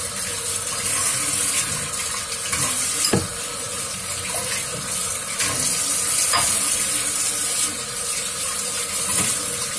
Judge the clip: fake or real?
real